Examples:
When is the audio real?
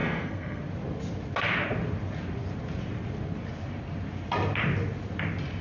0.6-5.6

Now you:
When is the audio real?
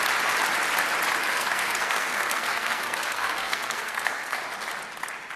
0.0-1.2; 4.4-5.4